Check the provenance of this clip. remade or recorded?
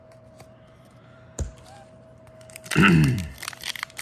remade